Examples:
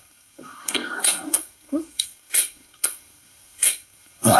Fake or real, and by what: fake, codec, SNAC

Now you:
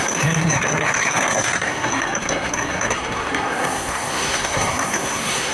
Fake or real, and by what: fake, codec, SNAC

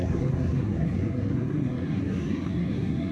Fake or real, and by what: fake, codec, SNAC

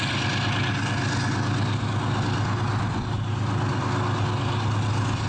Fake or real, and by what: real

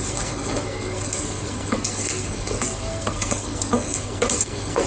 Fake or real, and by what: fake, codec, SNAC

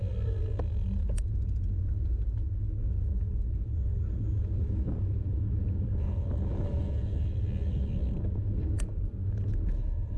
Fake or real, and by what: real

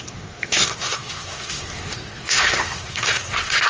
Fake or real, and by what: fake, codec, SNAC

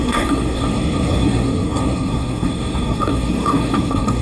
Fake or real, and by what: fake, codec, SNAC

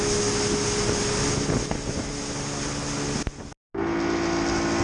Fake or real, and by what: real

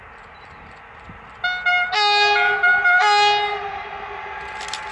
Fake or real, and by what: real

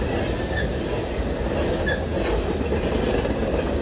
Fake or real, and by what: real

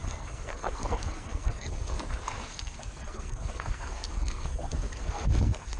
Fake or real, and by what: fake, codec, SNAC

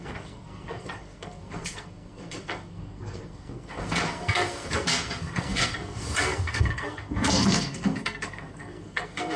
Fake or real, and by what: fake, codec, SNAC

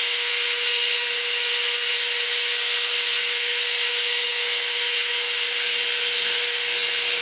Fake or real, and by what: fake, codec, SNAC